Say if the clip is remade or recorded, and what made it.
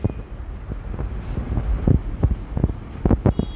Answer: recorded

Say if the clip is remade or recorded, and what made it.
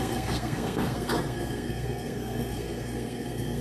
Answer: remade, codec, SNAC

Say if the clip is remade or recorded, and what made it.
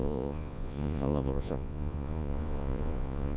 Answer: remade, vocoder, Vocos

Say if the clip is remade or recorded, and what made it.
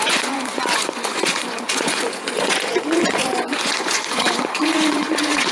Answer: remade, vocoder, Vocos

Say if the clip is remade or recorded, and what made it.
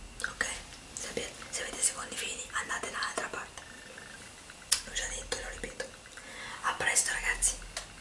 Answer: recorded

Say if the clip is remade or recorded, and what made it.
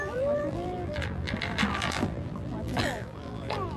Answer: remade, vocoder, BigVGAN v2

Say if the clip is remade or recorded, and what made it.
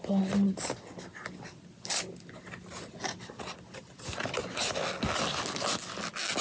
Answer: recorded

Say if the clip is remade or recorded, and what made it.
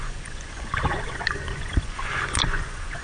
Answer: remade, vocoder, Vocos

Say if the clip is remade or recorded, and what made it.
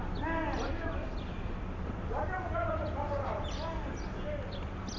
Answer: recorded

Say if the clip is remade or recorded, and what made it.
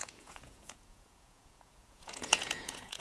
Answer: remade, vocoder, Vocos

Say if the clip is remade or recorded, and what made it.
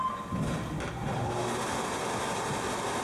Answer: recorded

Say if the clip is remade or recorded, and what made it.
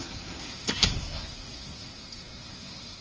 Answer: remade, codec, SNAC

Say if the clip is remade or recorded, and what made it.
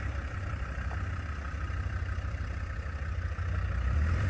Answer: remade, vocoder, BigVGAN v2